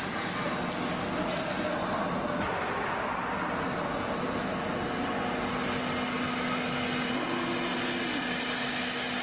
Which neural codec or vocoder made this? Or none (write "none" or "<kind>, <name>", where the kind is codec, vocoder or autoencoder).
none